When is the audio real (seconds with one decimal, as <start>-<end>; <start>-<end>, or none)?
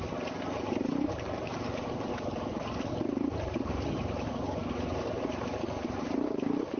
2.1-2.9